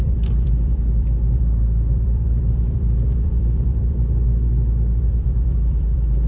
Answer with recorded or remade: remade